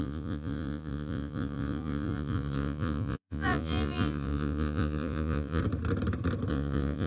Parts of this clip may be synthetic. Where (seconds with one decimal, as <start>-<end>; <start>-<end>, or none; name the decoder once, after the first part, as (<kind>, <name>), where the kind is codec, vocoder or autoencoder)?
0.0-5.6 (vocoder, Vocos); 6.5-7.1